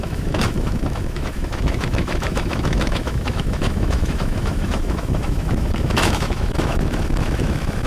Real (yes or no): no